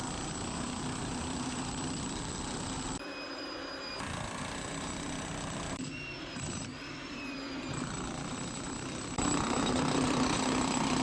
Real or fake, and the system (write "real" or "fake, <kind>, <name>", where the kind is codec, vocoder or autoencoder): fake, vocoder, BigVGAN v2